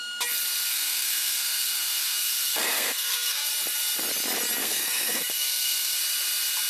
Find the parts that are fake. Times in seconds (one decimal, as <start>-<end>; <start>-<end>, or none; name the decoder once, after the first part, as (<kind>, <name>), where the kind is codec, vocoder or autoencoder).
0.7-3.5 (codec, SNAC); 4.6-6.0